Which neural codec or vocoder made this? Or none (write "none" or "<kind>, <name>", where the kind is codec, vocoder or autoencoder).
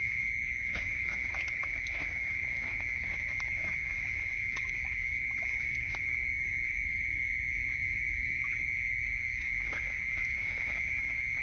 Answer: codec, DAC